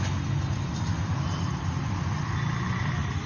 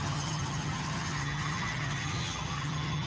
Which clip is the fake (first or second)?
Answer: second